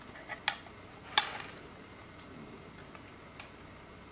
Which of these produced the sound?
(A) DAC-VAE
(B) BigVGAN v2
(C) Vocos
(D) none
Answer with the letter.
D